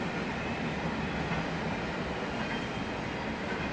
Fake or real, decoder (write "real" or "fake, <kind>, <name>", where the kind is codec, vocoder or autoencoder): real